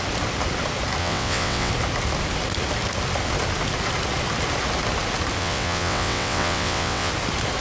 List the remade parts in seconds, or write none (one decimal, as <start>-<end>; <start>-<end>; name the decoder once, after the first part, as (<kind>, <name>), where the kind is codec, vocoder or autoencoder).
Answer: 1.0-1.7 (vocoder, WaveNeXt); 5.4-7.1

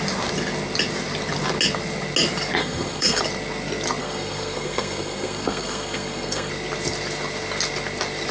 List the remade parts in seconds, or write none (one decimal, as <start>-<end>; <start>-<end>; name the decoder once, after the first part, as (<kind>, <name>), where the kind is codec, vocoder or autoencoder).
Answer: 2.6-3.2 (codec, SNAC); 4.0-6.5

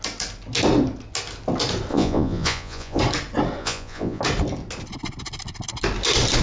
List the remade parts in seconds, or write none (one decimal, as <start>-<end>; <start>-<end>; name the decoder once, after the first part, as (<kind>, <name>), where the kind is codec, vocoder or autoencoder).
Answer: 1.9-3.0 (vocoder, Vocos); 3.6-4.2

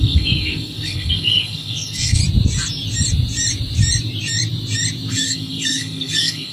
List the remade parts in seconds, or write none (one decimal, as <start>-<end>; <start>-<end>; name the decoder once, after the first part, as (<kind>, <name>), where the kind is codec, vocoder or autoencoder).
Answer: 0.0-2.2 (codec, SNAC); 5.1-6.5